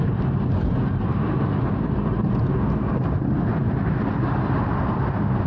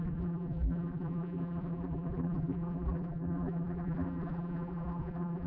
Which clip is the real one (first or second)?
first